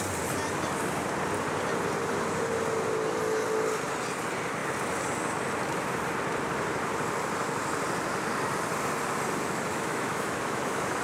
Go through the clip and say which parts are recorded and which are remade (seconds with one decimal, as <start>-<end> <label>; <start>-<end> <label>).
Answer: 0.0-9.7 recorded; 9.7-11.0 remade